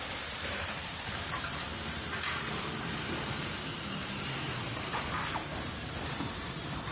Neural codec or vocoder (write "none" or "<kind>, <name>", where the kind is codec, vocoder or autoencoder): vocoder, BigVGAN v2